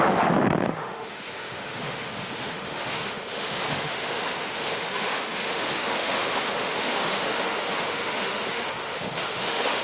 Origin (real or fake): fake